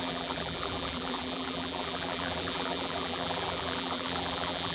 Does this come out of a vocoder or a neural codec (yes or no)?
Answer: yes